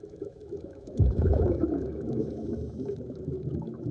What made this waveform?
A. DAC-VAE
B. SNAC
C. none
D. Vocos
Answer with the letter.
A